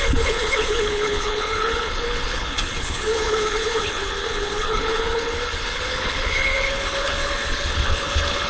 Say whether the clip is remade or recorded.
remade